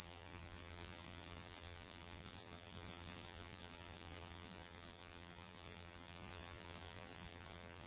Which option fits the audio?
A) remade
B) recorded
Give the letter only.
A